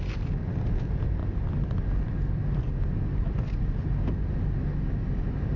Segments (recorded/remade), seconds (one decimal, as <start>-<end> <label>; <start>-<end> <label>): 0.0-5.6 recorded